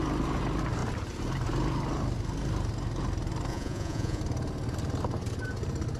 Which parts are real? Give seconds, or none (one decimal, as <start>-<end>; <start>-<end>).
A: 0.0-3.5; 4.2-6.0